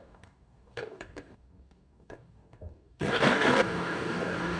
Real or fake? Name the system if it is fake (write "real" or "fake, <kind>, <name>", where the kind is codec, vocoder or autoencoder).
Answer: fake, codec, DAC